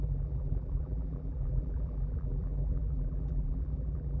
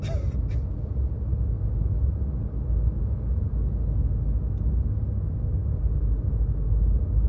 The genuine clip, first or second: second